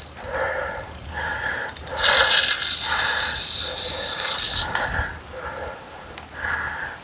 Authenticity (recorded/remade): recorded